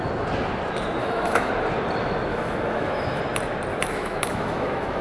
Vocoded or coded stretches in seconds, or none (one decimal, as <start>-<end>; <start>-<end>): 1.0-1.5; 2.3-3.2; 3.7-5.0